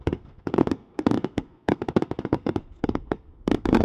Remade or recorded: remade